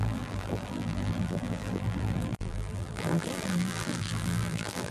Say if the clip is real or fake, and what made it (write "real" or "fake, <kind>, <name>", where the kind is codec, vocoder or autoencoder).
fake, vocoder, BigVGAN v2